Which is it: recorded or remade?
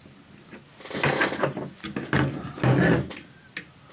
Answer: recorded